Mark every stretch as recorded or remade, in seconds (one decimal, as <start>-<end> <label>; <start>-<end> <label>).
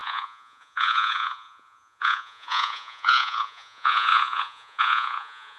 0.0-5.6 remade